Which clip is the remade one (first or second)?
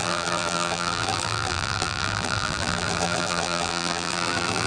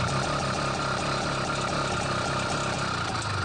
first